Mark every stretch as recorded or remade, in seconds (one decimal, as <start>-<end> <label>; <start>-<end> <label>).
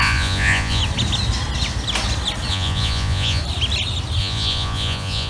0.0-0.8 remade; 0.8-2.5 recorded; 2.5-3.4 remade; 3.4-4.2 recorded; 4.2-5.3 remade